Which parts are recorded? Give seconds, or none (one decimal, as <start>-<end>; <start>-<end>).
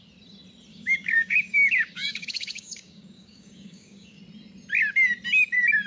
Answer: 0.0-0.7; 4.2-5.9